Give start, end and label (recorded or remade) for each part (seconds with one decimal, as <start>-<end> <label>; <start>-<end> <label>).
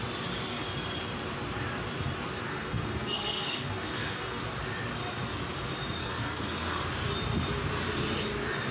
0.0-2.5 recorded; 2.5-4.4 remade; 4.4-6.0 recorded; 6.0-6.8 remade; 6.8-8.7 recorded